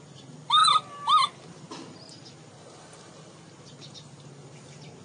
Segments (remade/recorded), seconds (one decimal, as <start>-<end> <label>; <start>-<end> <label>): 0.0-5.0 recorded